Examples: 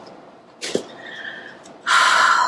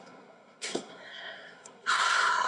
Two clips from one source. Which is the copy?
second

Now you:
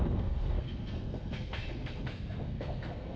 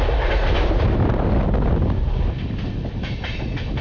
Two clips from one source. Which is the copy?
first